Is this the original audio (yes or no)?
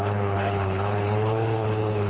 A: no